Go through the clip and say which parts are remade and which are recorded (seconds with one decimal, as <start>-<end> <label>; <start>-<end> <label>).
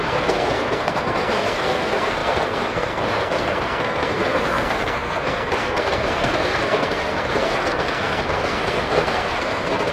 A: 0.0-9.9 remade